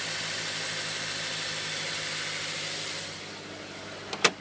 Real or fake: real